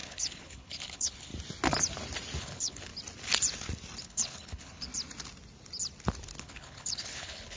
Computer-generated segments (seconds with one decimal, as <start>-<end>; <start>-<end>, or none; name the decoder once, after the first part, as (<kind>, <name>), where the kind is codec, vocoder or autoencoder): 0.0-1.3 (codec, HILCodec); 2.4-2.9; 4.0-4.9; 6.4-7.6